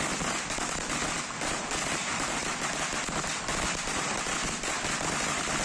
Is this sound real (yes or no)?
yes